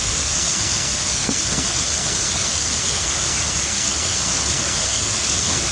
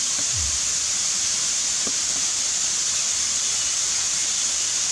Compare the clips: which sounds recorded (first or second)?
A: second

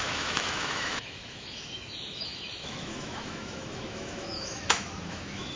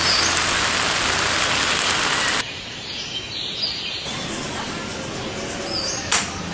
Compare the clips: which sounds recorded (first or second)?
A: second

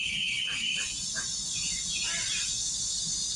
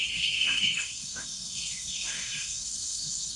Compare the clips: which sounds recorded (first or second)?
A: first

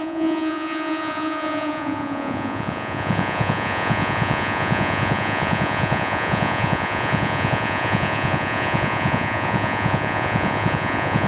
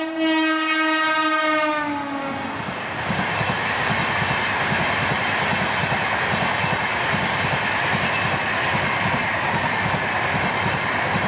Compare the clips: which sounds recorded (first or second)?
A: second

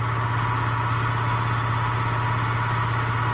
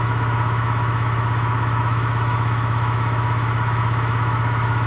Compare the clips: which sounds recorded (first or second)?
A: first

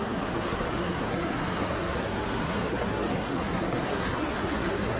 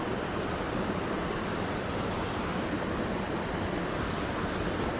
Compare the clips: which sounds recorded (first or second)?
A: second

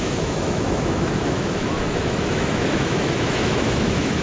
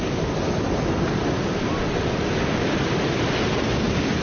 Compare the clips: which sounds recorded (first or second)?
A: second